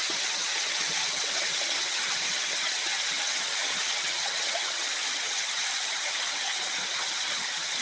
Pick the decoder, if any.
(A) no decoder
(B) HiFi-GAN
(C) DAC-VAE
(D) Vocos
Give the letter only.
B